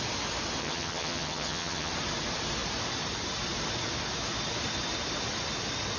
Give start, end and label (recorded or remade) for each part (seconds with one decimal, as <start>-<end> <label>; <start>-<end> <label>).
0.0-0.6 recorded; 0.6-1.9 remade; 1.9-6.0 recorded